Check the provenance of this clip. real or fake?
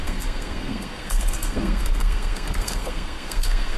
fake